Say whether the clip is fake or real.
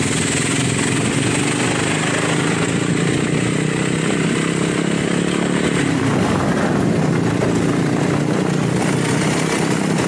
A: real